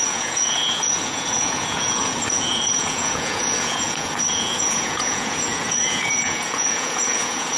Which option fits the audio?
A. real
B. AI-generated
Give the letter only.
B